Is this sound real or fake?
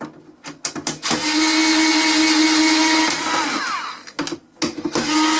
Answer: real